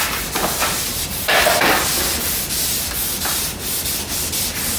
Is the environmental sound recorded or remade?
recorded